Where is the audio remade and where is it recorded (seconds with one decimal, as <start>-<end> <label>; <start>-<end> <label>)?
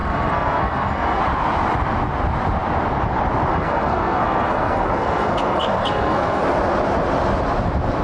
0.0-1.2 remade; 1.2-3.5 recorded; 3.5-6.4 remade; 6.4-8.0 recorded